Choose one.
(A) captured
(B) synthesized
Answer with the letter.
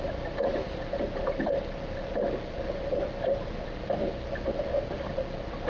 A